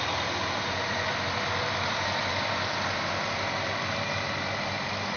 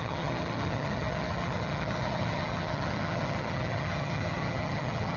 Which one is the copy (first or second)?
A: second